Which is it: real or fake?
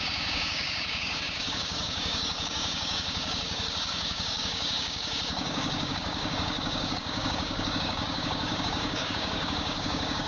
fake